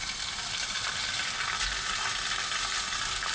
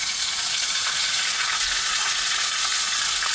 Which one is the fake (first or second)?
second